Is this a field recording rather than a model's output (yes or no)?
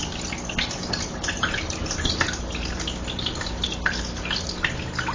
yes